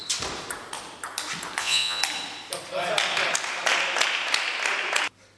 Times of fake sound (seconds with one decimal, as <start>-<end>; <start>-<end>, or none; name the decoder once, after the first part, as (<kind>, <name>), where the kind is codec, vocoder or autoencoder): 1.6-2.0 (vocoder, Vocos)